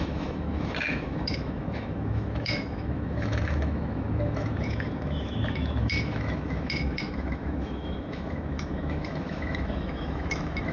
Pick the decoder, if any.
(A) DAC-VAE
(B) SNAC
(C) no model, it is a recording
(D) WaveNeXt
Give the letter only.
A